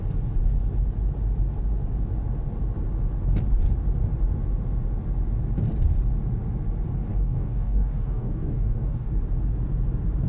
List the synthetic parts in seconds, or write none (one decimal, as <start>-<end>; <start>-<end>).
7.1-9.1